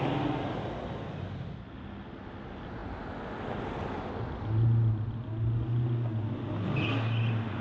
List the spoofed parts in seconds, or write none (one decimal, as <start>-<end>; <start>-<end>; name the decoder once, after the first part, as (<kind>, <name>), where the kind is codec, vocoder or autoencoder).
none